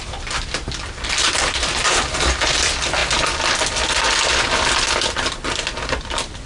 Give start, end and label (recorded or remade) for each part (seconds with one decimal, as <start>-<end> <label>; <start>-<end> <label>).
0.0-6.5 remade